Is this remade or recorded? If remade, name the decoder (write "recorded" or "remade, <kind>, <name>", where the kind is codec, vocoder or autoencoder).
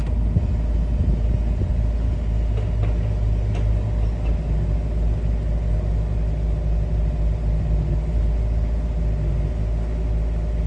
recorded